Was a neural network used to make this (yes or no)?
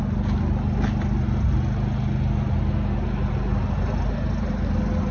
no